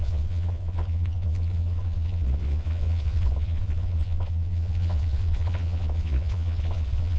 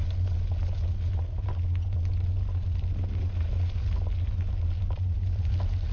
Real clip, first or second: second